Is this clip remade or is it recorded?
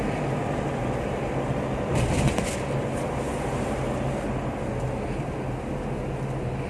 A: recorded